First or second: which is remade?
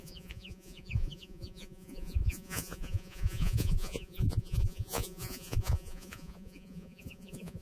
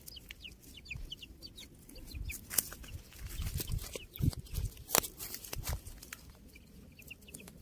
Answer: first